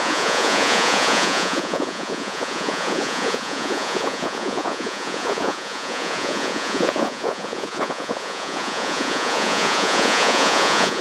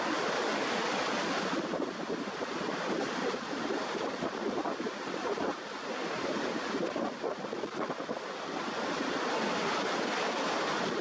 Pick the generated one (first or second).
first